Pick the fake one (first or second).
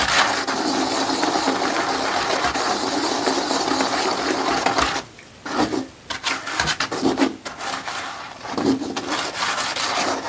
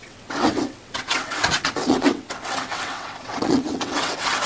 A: second